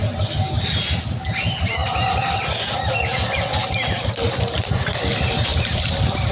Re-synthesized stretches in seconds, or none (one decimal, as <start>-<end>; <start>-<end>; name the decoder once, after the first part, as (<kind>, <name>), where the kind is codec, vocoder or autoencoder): none

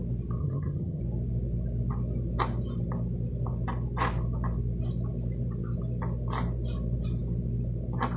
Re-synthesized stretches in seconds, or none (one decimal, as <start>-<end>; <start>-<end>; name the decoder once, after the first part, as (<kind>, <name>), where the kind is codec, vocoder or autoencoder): 0.4-1.0 (vocoder, HiFi-GAN)

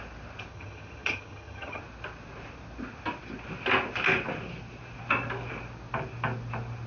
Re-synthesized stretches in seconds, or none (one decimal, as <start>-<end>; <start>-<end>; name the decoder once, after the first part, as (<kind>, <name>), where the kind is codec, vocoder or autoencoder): 0.5-1.8 (vocoder, HiFi-GAN)

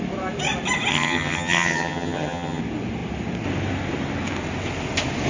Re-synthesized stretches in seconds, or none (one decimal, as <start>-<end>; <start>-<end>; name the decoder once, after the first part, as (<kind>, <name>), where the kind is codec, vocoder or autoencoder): 0.9-2.6 (vocoder, HiFi-GAN)

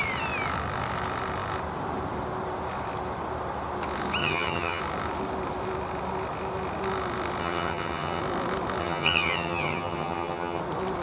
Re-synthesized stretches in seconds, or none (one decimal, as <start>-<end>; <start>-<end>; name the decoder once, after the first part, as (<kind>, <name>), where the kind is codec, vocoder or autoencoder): 4.2-4.8 (vocoder, HiFi-GAN); 7.4-8.2; 8.8-10.6

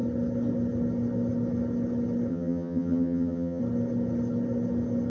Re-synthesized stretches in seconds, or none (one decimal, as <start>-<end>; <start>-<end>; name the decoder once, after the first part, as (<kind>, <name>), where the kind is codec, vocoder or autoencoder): 2.3-3.6 (vocoder, HiFi-GAN)